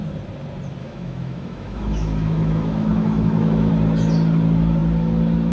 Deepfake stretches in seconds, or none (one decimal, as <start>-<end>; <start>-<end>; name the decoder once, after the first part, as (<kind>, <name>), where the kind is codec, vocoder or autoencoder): 0.8-3.7 (autoencoder, DAC-VAE)